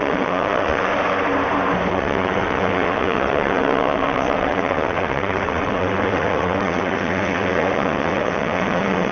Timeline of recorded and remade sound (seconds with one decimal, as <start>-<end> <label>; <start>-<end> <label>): 0.0-0.9 remade; 0.9-1.9 recorded; 1.9-9.1 remade